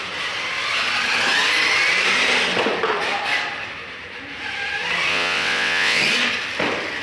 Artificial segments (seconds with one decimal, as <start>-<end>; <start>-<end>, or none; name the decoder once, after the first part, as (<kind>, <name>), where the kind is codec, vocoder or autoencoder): 5.1-6.0 (vocoder, WaveNeXt)